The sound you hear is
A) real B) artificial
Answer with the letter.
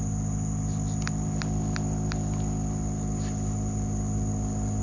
A